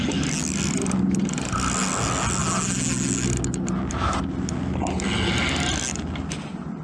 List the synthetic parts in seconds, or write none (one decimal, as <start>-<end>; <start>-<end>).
none